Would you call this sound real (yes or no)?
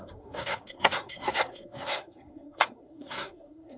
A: no